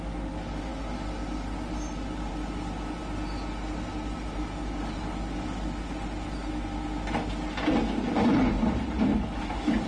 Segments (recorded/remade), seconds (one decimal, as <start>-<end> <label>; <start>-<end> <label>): 0.0-9.1 recorded; 9.1-9.9 remade